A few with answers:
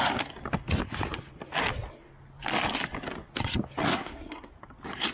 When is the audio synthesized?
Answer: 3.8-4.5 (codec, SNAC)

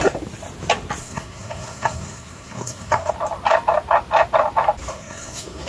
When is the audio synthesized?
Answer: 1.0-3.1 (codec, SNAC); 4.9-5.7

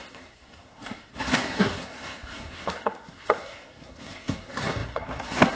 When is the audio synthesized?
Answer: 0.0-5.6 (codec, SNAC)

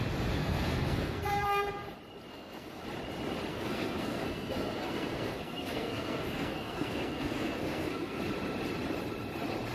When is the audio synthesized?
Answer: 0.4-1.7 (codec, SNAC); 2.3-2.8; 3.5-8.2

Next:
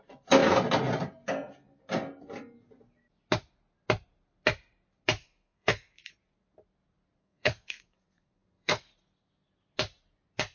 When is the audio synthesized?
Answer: 5.2-6.1 (codec, SNAC); 7.2-8.9

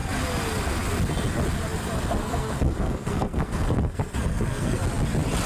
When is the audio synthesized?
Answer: 2.2-4.8 (codec, SNAC)

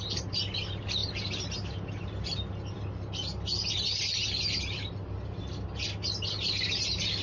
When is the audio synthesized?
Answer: none